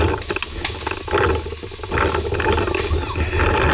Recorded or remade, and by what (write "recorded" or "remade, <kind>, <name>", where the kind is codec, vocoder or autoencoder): recorded